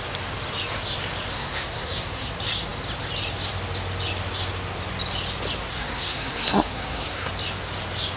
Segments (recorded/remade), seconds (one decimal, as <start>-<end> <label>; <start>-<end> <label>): 0.0-1.3 recorded; 1.3-2.3 remade; 2.3-5.7 recorded; 5.7-7.3 remade; 7.3-8.2 recorded